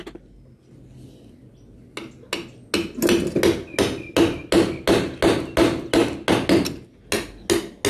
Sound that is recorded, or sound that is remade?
recorded